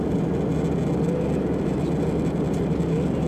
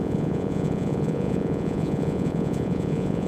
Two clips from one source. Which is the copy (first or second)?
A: second